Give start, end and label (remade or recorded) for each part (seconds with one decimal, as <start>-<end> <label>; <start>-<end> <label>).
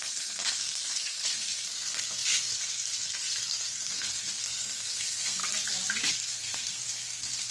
0.0-5.4 remade; 5.4-6.1 recorded; 6.1-7.5 remade